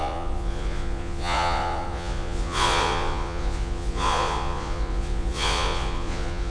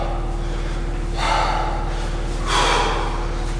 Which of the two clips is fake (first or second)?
first